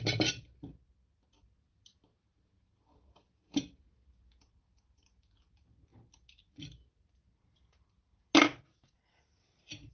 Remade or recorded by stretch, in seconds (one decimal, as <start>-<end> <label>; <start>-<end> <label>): 0.0-2.1 recorded; 2.1-4.5 remade; 4.5-9.9 recorded